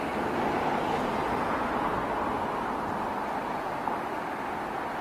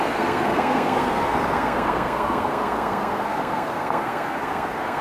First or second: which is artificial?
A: second